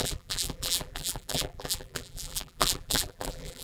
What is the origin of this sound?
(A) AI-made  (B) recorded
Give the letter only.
A